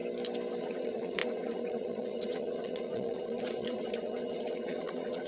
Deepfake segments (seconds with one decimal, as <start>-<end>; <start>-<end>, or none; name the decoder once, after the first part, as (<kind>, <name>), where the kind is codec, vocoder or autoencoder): 0.6-5.3 (vocoder, Vocos)